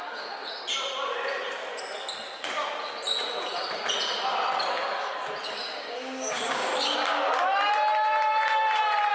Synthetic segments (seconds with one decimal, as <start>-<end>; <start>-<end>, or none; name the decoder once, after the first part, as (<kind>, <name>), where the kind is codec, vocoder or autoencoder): 0.0-0.4 (codec, DAC); 5.5-6.7